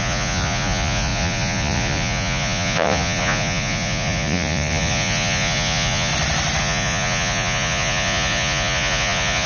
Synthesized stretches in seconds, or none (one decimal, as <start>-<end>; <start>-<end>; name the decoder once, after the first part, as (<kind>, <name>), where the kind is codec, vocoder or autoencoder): 0.0-6.1 (vocoder, Vocos); 6.6-9.5